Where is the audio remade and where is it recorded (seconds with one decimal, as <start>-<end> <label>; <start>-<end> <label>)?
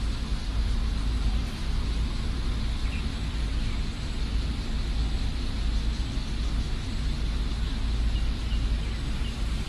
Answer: 0.0-0.4 recorded; 0.4-1.3 remade; 1.3-9.7 recorded